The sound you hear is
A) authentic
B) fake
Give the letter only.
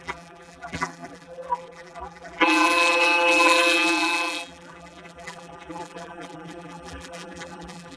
B